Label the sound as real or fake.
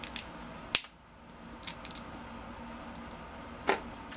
real